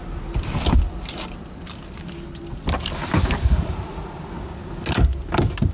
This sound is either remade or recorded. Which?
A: recorded